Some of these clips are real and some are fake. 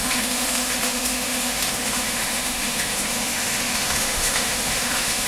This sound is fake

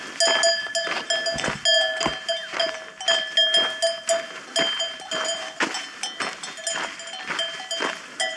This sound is real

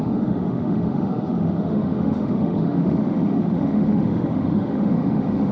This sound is fake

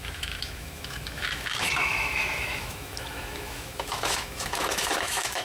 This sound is fake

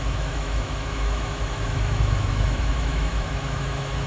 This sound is fake